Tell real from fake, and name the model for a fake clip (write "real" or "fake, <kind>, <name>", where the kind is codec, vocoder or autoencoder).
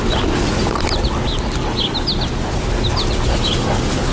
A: real